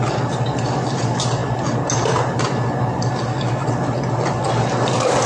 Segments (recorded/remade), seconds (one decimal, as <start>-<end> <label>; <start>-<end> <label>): 0.0-5.3 recorded